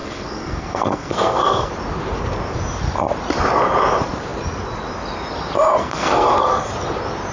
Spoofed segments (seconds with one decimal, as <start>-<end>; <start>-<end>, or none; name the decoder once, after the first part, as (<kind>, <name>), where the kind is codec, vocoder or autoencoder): 0.0-1.7 (codec, SNAC); 5.8-6.7